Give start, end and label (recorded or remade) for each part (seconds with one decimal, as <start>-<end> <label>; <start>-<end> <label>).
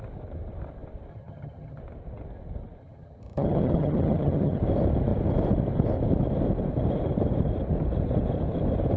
0.0-1.1 recorded; 1.1-1.8 remade; 1.8-2.8 recorded; 2.8-4.6 remade; 4.6-9.0 recorded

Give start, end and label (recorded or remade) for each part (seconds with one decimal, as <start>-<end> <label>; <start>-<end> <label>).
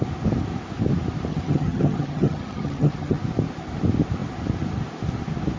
0.0-1.3 recorded; 1.3-3.2 remade; 3.2-5.6 recorded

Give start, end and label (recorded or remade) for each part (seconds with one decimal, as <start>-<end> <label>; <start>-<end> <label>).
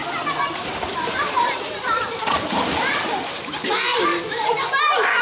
0.0-5.2 recorded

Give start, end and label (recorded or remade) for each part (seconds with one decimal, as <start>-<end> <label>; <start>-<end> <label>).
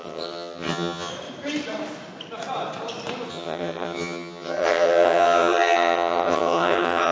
0.0-1.1 remade; 1.1-3.3 recorded; 3.3-7.1 remade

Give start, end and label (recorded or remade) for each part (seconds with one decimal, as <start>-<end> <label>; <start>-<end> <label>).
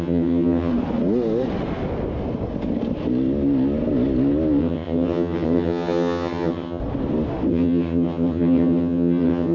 0.0-0.7 remade; 0.7-4.6 recorded; 4.6-6.8 remade; 6.8-7.5 recorded; 7.5-9.5 remade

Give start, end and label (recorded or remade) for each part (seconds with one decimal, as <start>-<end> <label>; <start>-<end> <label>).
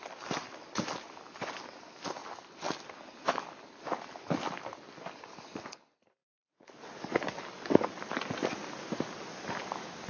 0.0-10.1 recorded